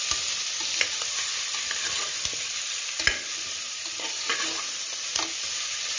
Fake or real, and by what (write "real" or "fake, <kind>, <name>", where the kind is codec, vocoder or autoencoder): real